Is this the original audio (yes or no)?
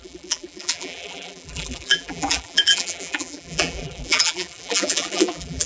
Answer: no